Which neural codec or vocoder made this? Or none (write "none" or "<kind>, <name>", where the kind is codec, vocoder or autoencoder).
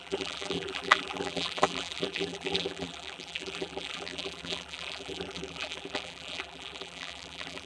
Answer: vocoder, BigVGAN v2